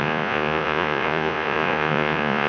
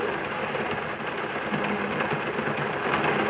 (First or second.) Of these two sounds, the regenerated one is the first